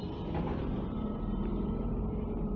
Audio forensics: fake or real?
fake